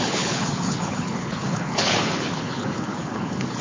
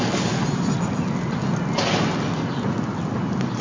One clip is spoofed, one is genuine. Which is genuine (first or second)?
second